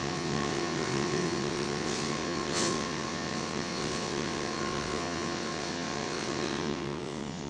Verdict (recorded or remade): remade